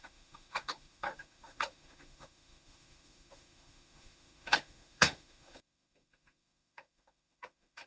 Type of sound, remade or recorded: remade